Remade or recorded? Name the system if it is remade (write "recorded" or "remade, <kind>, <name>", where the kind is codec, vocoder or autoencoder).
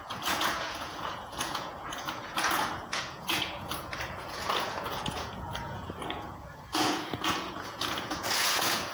remade, vocoder, Vocos